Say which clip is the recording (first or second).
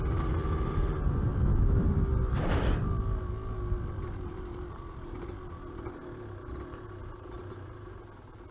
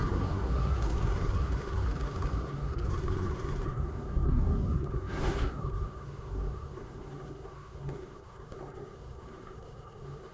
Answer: first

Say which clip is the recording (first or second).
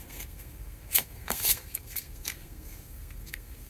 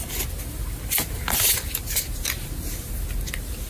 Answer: second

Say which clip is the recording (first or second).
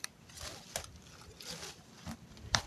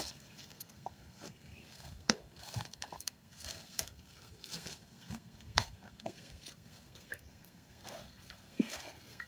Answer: first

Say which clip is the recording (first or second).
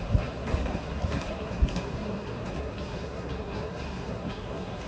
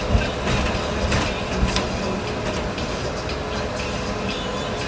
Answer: second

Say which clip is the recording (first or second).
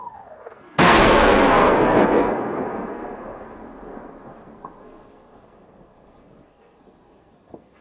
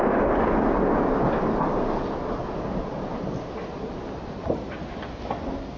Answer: second